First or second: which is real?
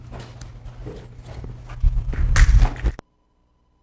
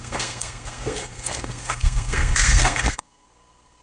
first